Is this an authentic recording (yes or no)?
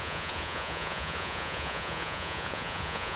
no